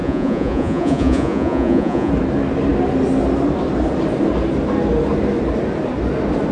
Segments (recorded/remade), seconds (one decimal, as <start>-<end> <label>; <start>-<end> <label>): 0.0-2.1 remade; 2.1-6.5 recorded